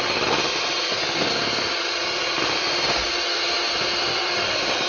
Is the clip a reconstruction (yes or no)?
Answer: no